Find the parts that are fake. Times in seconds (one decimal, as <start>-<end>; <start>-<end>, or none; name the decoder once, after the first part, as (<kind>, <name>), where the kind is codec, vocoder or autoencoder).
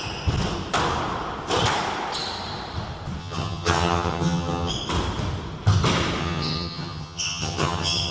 3.2-4.7 (vocoder, HiFi-GAN); 6.2-8.1